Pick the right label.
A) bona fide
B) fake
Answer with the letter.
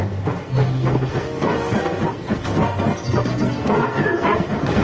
B